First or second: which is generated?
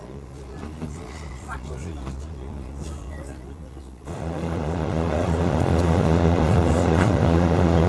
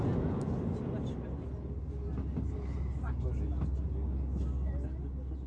first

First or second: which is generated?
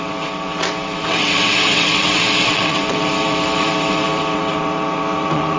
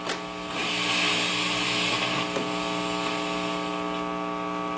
first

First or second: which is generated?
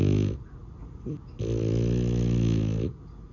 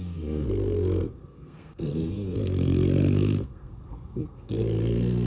second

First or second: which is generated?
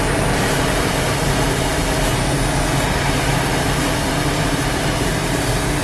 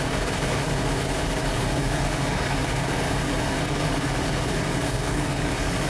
second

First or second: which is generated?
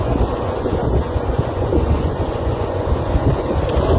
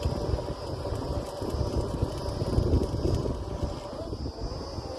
first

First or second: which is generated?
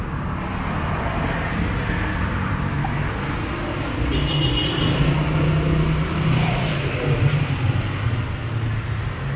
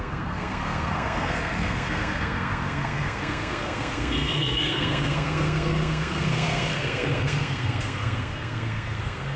second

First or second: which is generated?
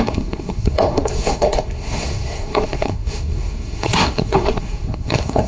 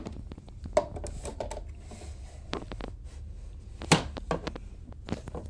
first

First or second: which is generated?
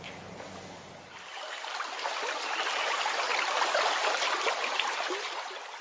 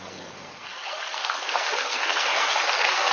second